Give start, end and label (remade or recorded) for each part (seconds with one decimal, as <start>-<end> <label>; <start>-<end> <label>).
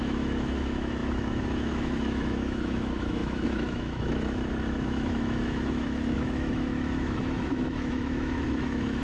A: 0.0-9.0 remade